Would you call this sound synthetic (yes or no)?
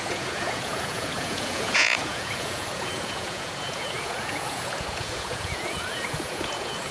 yes